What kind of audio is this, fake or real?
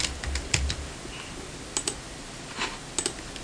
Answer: real